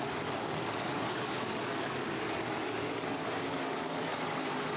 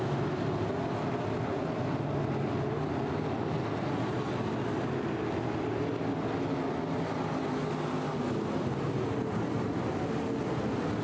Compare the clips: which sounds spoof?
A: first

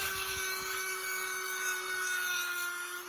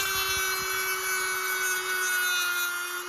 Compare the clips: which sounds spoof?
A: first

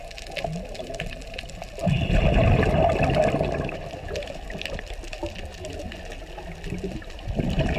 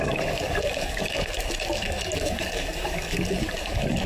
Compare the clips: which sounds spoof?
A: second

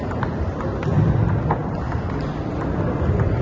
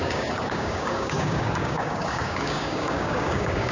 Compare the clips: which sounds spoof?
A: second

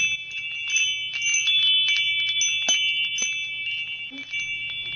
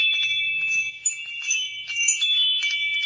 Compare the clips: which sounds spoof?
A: second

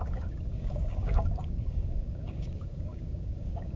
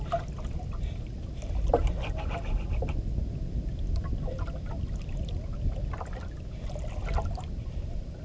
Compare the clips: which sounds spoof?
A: first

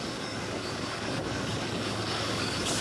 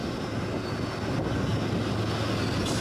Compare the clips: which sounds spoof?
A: first